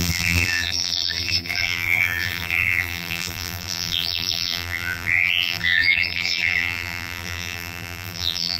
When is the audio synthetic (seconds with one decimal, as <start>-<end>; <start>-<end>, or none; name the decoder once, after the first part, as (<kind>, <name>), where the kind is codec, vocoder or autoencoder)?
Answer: 0.0-8.6 (vocoder, BigVGAN v2)